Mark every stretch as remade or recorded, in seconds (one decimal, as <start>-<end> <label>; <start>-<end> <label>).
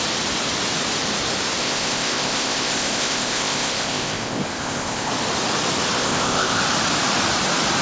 0.0-1.6 recorded; 1.6-5.1 remade; 5.1-6.0 recorded; 6.0-6.6 remade; 6.6-7.8 recorded